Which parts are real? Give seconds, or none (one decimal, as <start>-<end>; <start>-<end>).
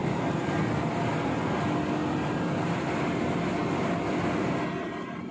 0.6-5.3